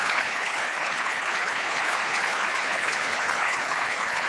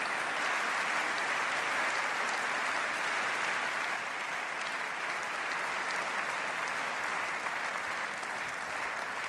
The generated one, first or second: first